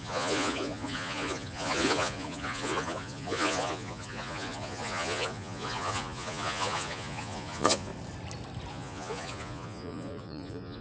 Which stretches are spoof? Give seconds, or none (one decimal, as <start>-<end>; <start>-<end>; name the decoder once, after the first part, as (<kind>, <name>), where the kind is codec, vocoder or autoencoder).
0.0-7.9 (vocoder, Vocos); 8.7-10.8